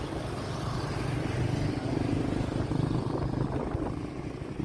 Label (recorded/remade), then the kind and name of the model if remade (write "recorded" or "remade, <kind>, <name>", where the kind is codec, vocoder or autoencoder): recorded